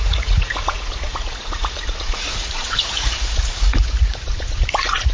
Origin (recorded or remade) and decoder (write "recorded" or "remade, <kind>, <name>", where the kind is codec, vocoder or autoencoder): remade, vocoder, Vocos